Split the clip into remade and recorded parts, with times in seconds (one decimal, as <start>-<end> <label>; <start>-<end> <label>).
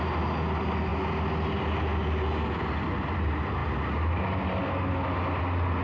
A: 0.0-5.8 recorded